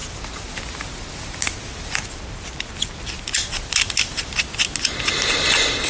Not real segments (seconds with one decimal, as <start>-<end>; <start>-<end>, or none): none

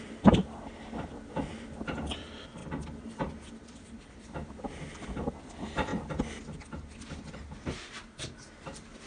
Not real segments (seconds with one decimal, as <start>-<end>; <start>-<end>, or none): 0.0-2.6; 3.5-5.9; 8.2-9.1

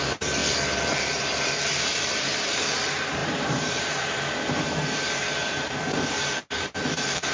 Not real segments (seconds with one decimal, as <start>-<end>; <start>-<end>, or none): 0.0-0.4; 1.0-7.3

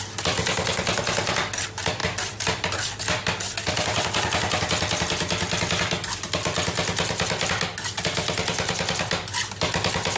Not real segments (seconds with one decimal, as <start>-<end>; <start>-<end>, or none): 2.0-3.0

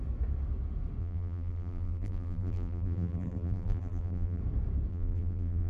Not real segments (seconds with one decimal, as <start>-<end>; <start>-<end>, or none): 1.0-4.4; 4.9-5.7

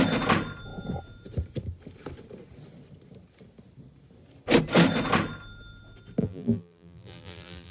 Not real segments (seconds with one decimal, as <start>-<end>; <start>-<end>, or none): 6.2-7.7

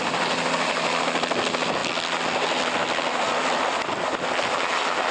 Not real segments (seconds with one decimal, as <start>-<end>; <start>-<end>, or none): none